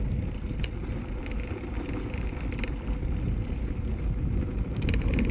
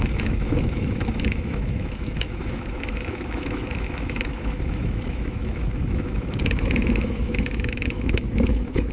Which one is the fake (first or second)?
second